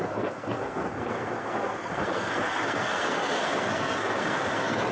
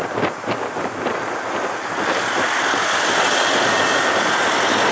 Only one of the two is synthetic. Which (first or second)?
first